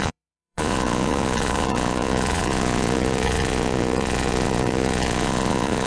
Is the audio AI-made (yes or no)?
yes